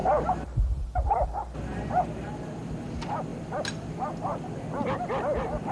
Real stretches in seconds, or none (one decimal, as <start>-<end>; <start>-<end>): 0.0-3.3; 4.7-5.7